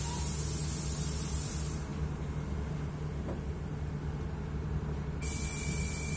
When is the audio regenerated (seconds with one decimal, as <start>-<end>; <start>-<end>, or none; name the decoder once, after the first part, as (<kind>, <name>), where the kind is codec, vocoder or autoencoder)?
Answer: none